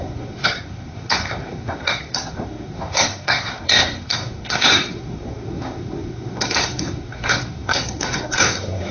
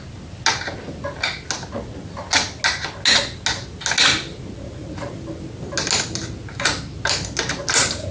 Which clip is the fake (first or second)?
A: first